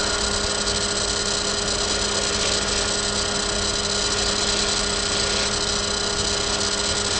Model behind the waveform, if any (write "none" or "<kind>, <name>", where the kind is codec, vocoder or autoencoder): none